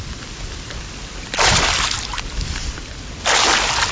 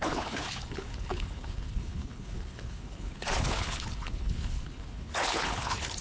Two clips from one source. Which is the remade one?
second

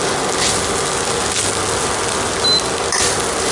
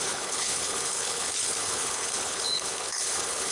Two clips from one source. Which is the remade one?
second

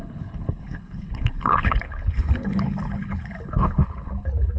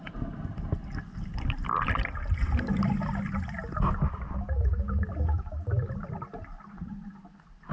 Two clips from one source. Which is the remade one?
first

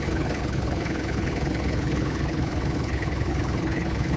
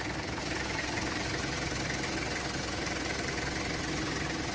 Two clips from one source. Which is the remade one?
first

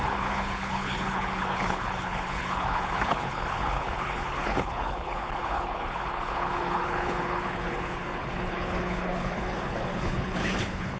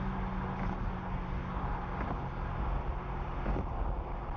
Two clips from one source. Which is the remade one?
first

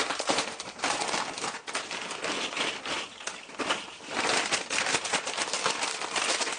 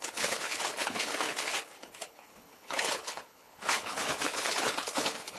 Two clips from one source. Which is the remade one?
second